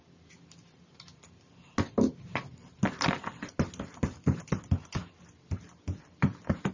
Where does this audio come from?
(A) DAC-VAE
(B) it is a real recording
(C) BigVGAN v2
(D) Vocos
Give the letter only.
B